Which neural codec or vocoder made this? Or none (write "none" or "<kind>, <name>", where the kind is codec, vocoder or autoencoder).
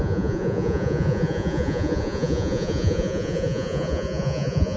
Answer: vocoder, Vocos